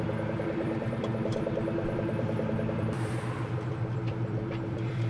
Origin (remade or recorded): remade